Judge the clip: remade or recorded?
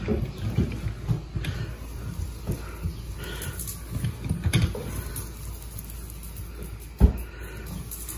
recorded